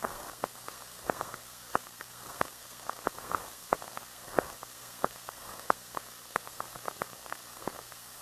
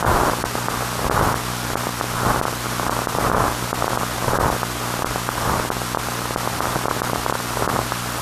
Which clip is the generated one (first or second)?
first